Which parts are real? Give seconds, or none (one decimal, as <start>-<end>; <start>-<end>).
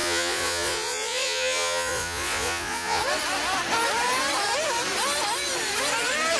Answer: 3.0-6.4